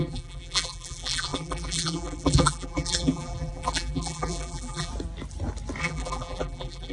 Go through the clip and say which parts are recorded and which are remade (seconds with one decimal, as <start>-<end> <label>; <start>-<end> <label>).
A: 0.0-4.9 remade; 4.9-5.8 recorded; 5.8-6.9 remade